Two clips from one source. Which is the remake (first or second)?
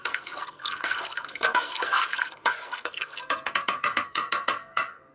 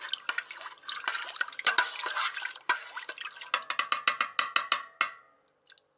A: first